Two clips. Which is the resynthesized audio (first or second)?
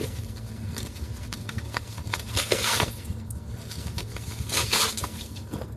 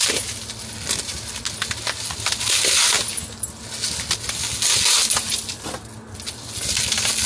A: first